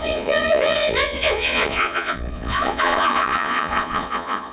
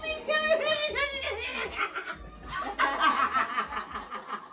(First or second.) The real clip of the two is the second